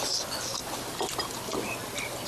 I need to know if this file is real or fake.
real